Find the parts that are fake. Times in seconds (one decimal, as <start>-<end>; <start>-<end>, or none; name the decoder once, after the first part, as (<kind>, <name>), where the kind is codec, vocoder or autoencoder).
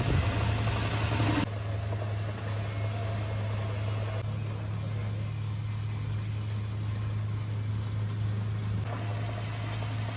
none